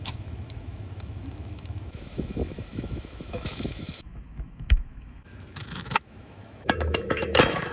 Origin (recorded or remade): remade